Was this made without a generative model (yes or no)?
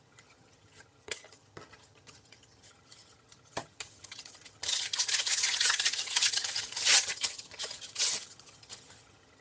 no